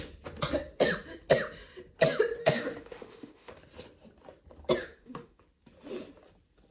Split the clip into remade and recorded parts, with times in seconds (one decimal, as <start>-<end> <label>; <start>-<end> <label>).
0.0-2.4 recorded; 2.4-3.5 remade; 3.5-4.8 recorded; 4.8-5.4 remade; 5.4-6.7 recorded